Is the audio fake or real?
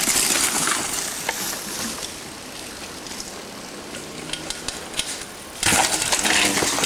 real